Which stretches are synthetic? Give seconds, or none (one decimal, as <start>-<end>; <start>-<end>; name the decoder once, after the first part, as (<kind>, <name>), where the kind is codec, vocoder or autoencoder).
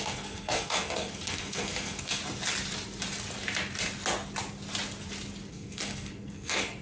0.0-2.2 (codec, SNAC); 5.5-6.8